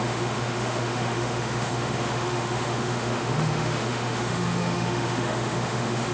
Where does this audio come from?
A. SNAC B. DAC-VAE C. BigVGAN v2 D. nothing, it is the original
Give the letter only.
B